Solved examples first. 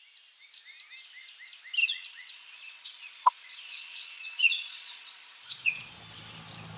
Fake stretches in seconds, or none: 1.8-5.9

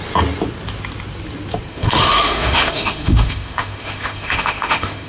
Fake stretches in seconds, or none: 1.7-5.1

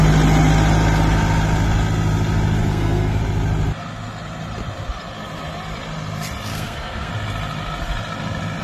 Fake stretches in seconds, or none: 2.7-3.2; 6.5-7.1

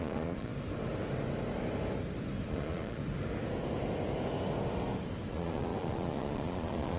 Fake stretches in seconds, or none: 0.0-0.5; 2.5-3.0; 5.3-7.0

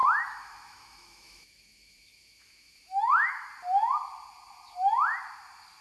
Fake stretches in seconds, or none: 0.0-3.5

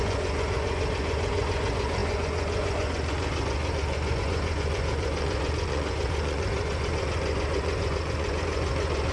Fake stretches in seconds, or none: 0.0-9.1

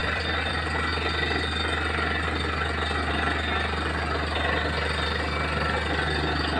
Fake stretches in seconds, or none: 0.0-0.5